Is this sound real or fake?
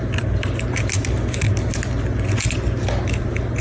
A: real